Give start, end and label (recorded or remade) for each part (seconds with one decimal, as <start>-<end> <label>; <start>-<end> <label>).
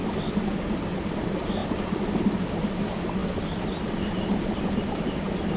0.0-1.6 recorded; 1.6-2.8 remade; 2.8-5.6 recorded